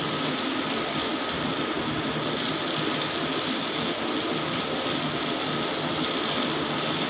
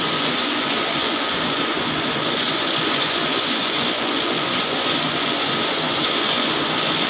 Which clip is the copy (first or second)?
second